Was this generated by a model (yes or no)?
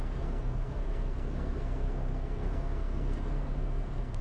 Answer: yes